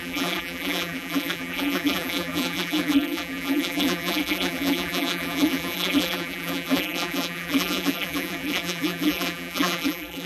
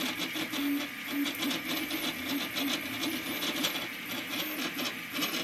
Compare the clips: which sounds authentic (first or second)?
second